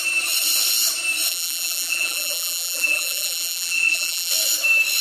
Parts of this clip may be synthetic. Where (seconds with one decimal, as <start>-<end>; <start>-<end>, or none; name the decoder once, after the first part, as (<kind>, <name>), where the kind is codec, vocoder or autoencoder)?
1.3-4.3 (vocoder, BigVGAN v2)